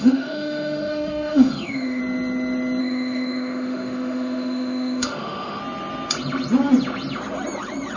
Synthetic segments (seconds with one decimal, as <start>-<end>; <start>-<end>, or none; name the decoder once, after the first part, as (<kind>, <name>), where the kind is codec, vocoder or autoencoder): 0.0-2.0 (autoencoder, DAC-VAE); 2.8-5.6